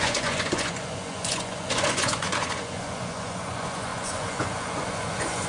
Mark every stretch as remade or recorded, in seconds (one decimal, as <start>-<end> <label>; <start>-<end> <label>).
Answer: 0.0-5.5 remade